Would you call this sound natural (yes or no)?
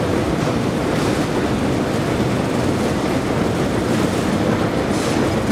yes